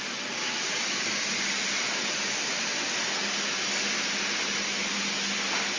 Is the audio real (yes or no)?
yes